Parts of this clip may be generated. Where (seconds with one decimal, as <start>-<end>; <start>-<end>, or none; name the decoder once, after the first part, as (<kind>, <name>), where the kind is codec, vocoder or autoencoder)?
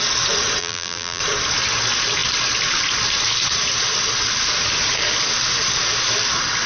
0.6-1.2 (vocoder, BigVGAN v2)